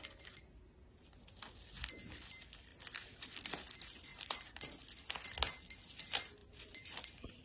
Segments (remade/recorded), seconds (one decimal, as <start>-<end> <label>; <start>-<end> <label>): 0.0-4.1 recorded; 4.1-4.7 remade; 4.7-6.4 recorded; 6.4-7.4 remade